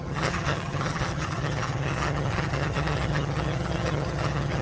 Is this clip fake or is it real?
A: fake